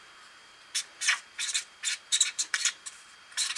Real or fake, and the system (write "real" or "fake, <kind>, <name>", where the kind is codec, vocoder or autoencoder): fake, vocoder, BigVGAN v2